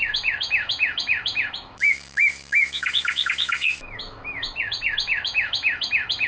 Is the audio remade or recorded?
remade